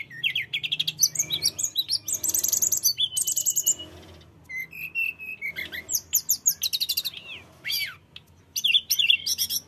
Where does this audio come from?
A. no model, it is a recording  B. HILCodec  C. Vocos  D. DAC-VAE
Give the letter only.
A